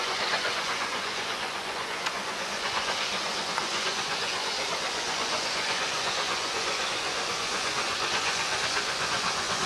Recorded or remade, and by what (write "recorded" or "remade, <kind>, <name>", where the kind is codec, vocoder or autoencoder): remade, vocoder, Vocos